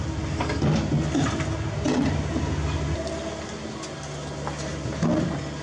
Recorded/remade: recorded